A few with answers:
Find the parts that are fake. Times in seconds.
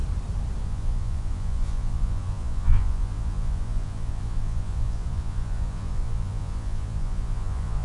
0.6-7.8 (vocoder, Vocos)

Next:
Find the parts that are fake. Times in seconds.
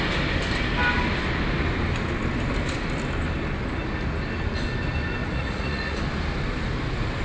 5.2-6.0 (vocoder, Vocos)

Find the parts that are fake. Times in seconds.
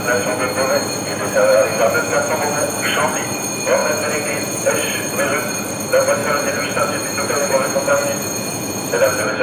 1.7-3.1 (vocoder, Vocos); 3.8-4.7; 6.2-7.0; 7.4-9.4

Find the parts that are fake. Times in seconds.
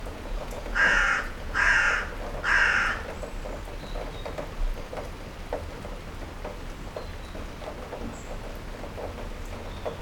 0.0-1.9 (vocoder, Vocos)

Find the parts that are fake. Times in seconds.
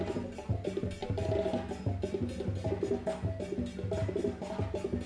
none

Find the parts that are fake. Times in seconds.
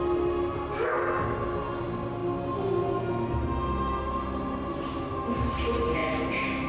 none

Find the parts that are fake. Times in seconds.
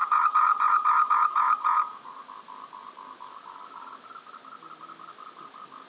0.0-2.3 (vocoder, Vocos)